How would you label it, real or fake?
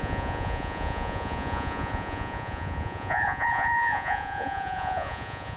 fake